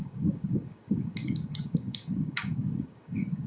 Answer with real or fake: fake